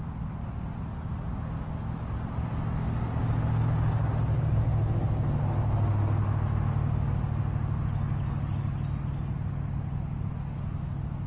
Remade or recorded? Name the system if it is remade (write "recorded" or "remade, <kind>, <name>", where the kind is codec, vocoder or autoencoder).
recorded